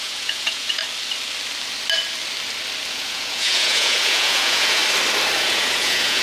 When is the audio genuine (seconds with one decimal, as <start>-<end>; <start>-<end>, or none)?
0.8-2.9; 4.8-5.4